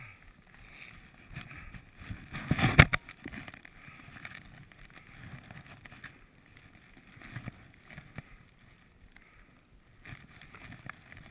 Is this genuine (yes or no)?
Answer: yes